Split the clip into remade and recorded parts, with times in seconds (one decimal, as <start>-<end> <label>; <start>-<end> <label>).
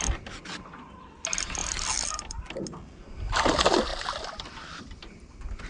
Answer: 0.0-1.6 recorded; 1.6-2.6 remade; 2.6-3.9 recorded; 3.9-4.8 remade; 4.8-5.7 recorded